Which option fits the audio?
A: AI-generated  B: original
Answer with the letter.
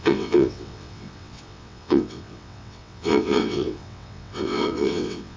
A